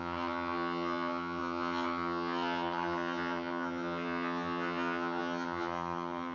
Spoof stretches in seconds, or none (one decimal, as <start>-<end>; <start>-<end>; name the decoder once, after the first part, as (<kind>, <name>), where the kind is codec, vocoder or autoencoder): 0.0-6.3 (vocoder, HiFi-GAN)